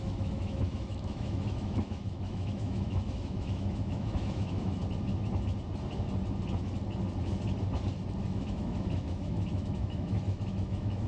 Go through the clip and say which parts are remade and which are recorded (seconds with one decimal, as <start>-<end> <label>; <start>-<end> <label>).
0.0-4.8 remade; 4.8-8.2 recorded; 8.2-11.1 remade